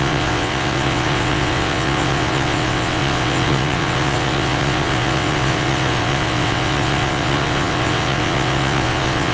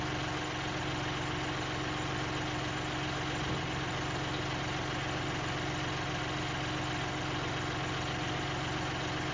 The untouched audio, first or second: second